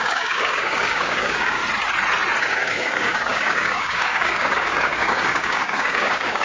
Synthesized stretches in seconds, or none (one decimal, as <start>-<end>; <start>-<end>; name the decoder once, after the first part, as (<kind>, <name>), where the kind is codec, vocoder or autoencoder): 0.0-1.6 (codec, DAC); 2.4-6.4